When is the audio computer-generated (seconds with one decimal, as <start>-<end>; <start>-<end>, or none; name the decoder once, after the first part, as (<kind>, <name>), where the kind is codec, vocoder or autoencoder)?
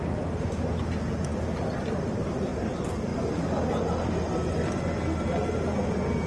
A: none